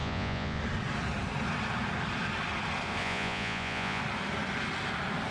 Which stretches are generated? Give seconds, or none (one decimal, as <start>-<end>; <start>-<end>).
0.0-0.6; 3.0-4.0